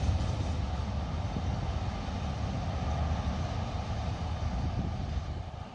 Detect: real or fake real